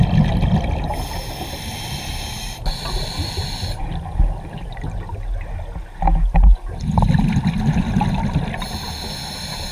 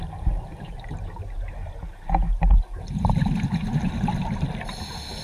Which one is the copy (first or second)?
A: second